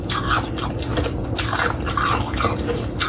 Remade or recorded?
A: recorded